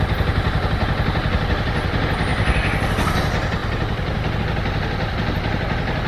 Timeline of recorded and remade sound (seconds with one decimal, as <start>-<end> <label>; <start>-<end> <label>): 0.0-6.1 recorded